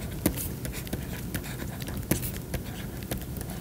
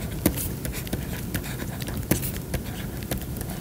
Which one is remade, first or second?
second